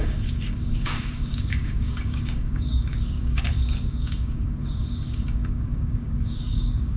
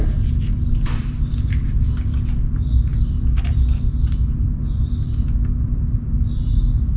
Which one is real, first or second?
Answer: second